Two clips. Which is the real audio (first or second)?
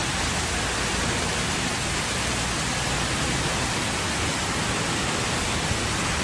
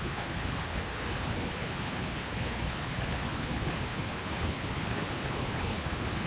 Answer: first